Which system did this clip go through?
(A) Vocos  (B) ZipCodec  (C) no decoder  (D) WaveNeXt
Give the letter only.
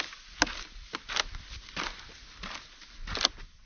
C